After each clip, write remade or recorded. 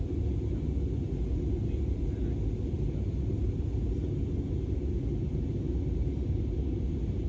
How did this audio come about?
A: recorded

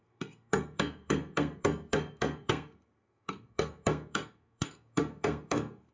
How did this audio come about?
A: remade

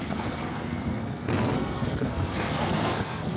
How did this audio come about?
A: remade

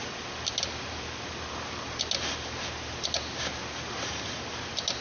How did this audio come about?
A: recorded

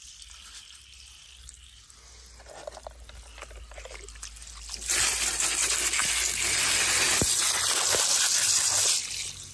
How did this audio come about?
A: recorded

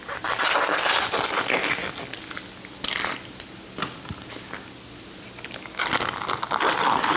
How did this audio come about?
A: recorded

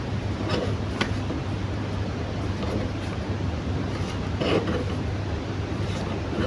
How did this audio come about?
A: recorded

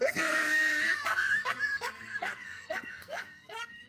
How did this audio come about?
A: remade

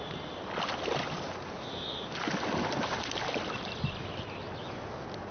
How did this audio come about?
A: recorded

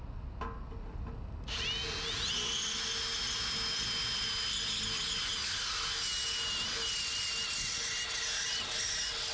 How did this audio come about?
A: recorded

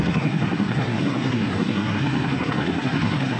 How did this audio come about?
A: remade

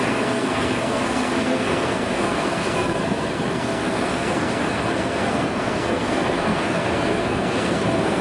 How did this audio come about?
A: remade